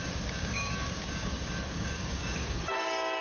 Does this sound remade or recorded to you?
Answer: remade